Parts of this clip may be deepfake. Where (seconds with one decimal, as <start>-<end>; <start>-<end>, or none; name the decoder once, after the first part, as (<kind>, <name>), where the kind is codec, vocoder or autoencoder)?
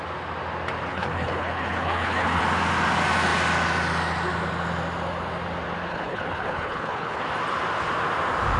0.9-2.4 (codec, HILCodec); 5.9-7.2